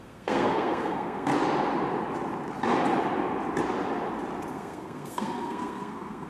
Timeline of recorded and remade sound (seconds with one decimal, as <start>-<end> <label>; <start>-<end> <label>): 0.0-1.3 remade; 1.3-4.5 recorded; 4.5-6.3 remade